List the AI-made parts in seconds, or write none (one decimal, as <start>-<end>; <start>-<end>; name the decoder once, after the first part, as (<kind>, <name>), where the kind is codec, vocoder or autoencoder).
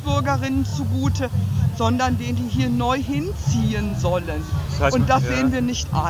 none